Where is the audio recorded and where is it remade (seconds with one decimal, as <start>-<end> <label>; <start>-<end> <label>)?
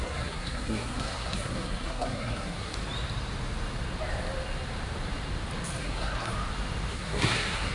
0.0-2.7 remade; 2.7-5.8 recorded; 5.8-6.3 remade; 6.3-6.9 recorded; 6.9-7.7 remade